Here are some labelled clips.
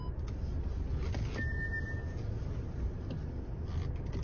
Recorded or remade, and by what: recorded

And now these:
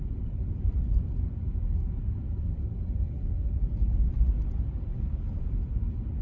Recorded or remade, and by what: recorded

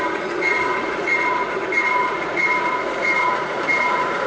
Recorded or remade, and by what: remade, vocoder, Vocos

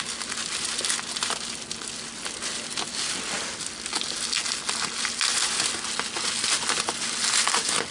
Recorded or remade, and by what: recorded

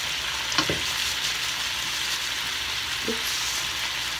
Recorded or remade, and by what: recorded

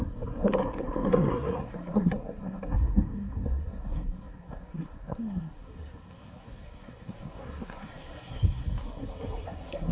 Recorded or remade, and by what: remade, codec, SNAC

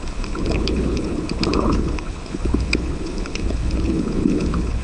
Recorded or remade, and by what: remade, codec, HILCodec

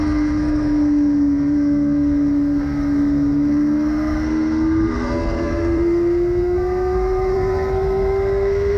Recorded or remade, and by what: remade, codec, SNAC